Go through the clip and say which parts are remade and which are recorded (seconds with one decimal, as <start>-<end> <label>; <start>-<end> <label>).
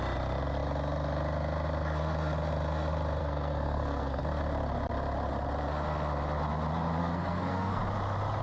0.0-3.2 recorded; 3.2-4.2 remade; 4.2-7.0 recorded; 7.0-7.8 remade; 7.8-8.4 recorded